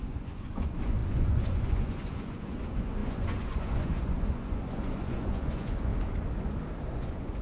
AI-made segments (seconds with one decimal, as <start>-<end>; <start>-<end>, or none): 0.0-5.9; 6.9-7.4